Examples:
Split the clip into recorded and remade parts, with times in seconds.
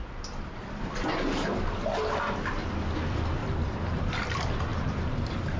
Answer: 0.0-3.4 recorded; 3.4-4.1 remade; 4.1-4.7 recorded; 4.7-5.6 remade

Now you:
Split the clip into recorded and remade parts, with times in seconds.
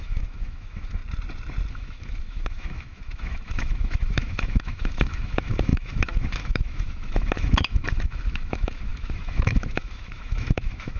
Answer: 0.0-1.0 remade; 1.0-1.7 recorded; 1.7-11.0 remade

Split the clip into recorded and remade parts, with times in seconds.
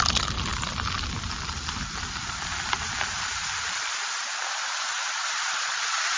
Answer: 0.0-6.2 recorded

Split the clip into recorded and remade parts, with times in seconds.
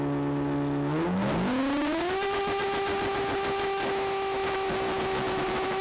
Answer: 0.0-5.8 recorded